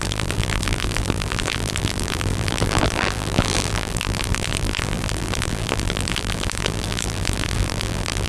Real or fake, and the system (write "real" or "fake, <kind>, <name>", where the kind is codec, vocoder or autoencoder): fake, vocoder, BigVGAN v2